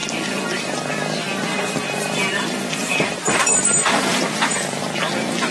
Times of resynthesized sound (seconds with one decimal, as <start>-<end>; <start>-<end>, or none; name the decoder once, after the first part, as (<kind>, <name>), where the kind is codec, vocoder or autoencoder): 1.5-4.8 (vocoder, BigVGAN v2)